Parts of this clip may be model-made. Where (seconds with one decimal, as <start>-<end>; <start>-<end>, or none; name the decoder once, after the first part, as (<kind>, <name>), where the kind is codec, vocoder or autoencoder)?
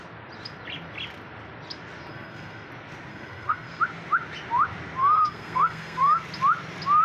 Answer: 2.1-2.7 (codec, SNAC); 3.1-3.8; 5.0-6.2